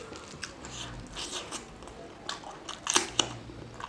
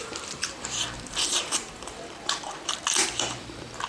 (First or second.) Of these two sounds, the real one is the first